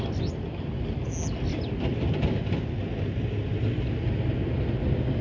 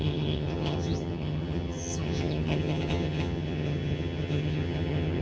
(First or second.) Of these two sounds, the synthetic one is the second